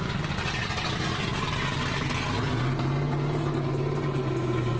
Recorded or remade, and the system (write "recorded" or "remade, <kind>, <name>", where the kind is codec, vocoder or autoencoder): recorded